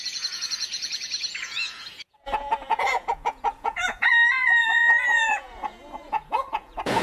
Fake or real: fake